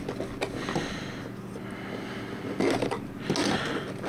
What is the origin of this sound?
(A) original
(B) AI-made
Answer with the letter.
A